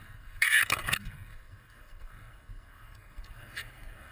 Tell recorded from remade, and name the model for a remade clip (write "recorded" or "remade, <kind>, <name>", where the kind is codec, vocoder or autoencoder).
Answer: remade, codec, SNAC